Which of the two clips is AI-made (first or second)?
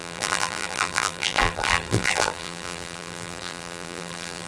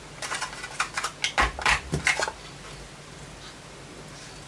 first